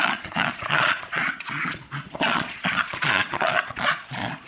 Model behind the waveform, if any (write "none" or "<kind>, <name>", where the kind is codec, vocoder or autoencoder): vocoder, Vocos